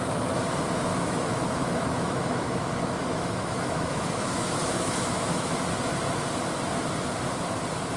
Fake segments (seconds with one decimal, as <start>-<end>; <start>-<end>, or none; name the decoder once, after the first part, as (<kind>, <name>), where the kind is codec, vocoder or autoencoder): 0.9-5.7 (autoencoder, DAC-VAE)